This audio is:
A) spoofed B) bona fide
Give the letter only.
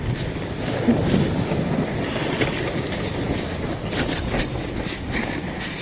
B